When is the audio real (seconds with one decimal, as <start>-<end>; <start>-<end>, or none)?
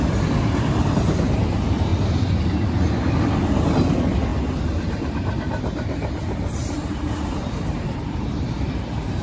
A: 0.0-4.3